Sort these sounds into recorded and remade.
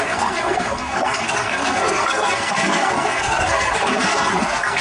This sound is remade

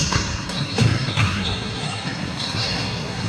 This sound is remade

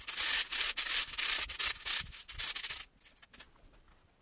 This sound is recorded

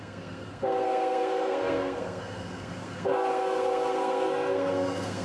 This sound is remade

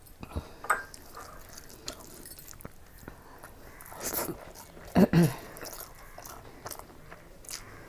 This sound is recorded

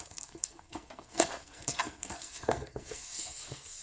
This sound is remade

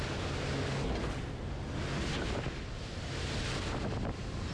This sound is recorded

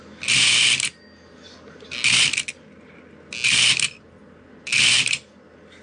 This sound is recorded